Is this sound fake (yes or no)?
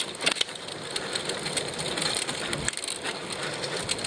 no